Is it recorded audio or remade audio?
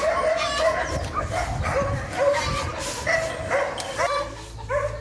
recorded